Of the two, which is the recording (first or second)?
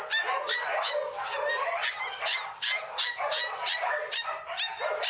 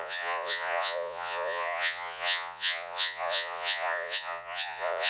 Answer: first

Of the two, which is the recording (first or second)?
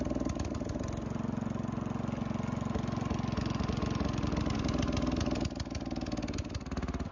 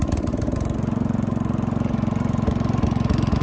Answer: first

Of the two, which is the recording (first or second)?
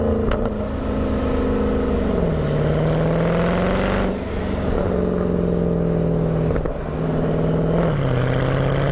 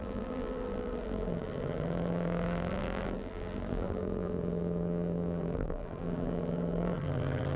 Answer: first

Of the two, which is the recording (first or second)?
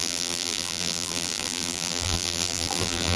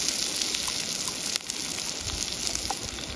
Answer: second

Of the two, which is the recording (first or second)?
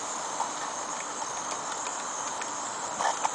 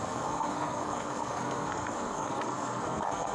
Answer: first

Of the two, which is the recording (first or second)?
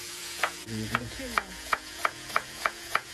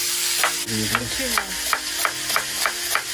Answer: second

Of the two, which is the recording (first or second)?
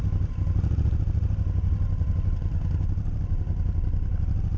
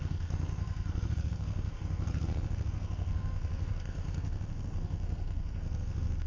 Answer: first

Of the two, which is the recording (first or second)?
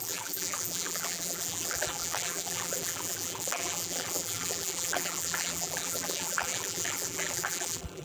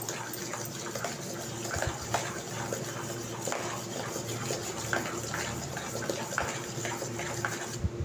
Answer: second